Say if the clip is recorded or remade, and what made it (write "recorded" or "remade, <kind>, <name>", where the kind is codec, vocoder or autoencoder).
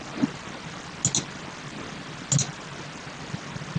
recorded